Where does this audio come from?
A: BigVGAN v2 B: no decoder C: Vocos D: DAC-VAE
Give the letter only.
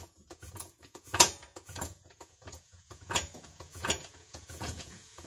C